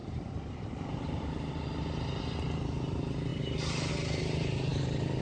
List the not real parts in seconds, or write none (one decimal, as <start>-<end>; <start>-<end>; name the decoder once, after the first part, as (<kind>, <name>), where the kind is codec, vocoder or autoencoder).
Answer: 0.0-0.7 (vocoder, BigVGAN v2); 3.3-3.9; 4.7-5.2